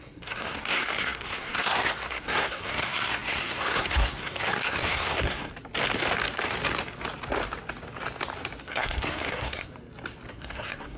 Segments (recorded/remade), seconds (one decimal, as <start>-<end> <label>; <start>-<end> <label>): 0.0-5.5 remade; 5.5-8.6 recorded; 8.6-9.7 remade; 9.7-10.3 recorded; 10.3-11.0 remade